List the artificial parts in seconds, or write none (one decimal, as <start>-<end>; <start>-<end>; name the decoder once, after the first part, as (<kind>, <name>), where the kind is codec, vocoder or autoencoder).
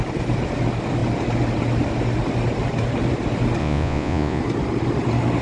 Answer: 3.6-4.4 (vocoder, Vocos)